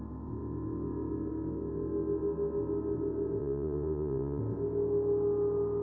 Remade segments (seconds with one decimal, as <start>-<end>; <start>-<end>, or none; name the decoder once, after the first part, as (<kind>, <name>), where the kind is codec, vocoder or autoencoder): 3.4-4.4 (vocoder, Vocos)